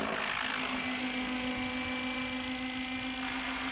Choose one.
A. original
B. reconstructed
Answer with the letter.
A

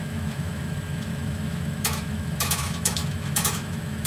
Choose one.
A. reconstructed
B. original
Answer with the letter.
A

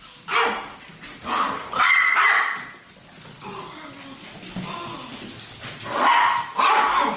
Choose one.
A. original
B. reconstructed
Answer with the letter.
A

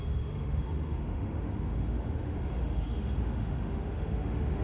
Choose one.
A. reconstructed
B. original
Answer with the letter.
A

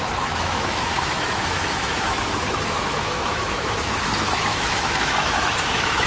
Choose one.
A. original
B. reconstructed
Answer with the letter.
B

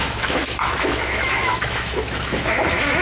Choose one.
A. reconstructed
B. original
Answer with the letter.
A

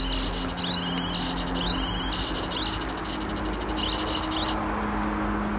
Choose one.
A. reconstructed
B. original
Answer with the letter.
B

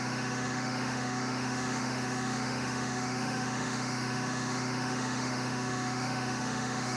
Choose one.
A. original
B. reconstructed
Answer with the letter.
B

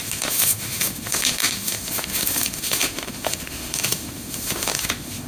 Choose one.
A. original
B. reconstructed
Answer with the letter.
B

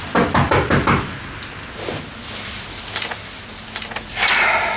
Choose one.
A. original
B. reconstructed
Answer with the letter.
A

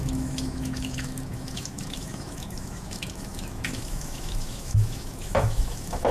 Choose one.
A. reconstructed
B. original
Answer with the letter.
A